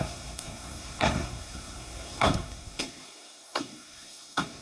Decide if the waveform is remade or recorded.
remade